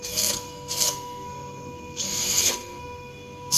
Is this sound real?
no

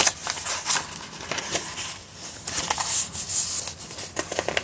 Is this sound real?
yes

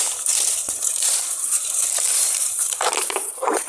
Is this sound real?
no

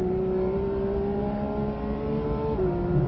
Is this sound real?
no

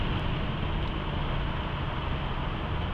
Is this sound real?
yes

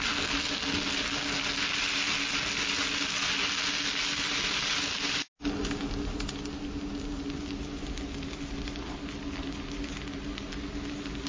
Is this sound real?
yes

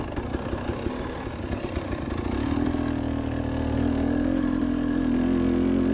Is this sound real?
yes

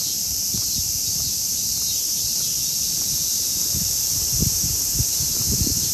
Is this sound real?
no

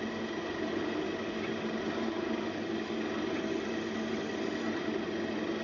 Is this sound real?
yes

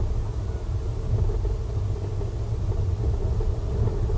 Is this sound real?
yes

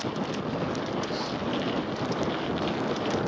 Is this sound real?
yes